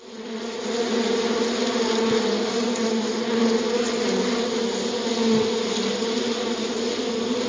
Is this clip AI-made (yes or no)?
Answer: no